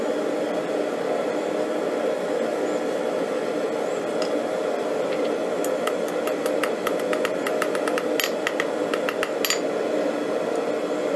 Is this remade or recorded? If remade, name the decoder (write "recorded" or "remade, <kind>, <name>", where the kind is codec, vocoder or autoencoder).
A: recorded